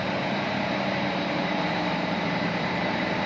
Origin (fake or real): fake